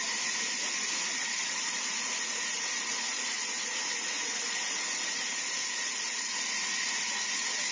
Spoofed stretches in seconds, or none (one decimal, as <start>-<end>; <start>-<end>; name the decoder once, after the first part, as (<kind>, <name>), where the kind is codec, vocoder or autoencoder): 0.0-7.7 (vocoder, Vocos)